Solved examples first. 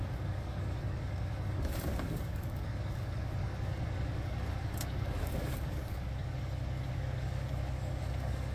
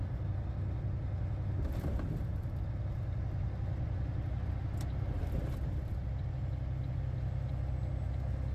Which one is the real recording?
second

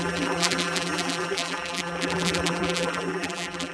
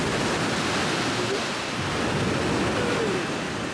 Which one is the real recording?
second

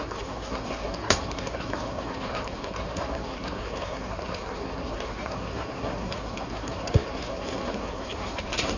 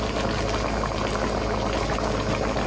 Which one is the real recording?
second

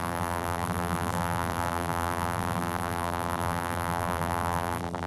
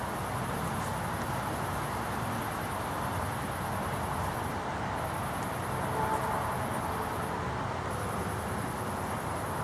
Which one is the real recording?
second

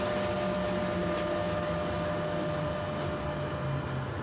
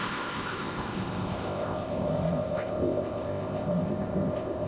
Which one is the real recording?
first